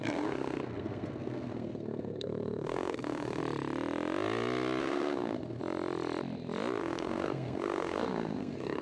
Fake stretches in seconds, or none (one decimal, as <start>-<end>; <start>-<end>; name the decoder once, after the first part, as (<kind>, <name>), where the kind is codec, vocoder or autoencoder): 0.0-3.4 (codec, SNAC); 4.8-5.6; 6.8-8.8